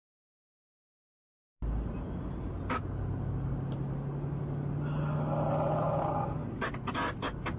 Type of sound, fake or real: real